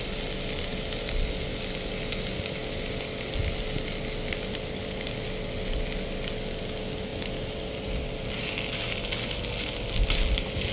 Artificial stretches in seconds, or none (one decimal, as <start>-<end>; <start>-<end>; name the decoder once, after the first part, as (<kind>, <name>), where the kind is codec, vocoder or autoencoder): none